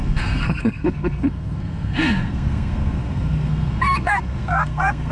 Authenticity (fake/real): fake